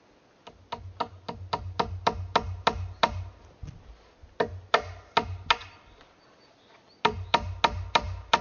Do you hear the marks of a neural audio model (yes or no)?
no